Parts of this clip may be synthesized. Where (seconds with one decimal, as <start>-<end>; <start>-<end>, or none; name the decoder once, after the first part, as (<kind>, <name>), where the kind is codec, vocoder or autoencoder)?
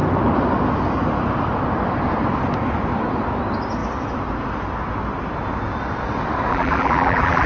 6.5-7.5 (vocoder, BigVGAN v2)